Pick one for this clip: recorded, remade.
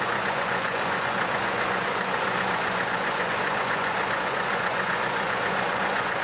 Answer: remade